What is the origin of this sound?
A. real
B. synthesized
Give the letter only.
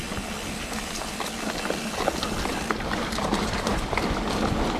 A